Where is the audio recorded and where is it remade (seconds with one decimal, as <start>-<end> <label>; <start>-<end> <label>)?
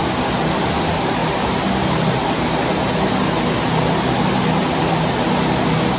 0.0-6.0 recorded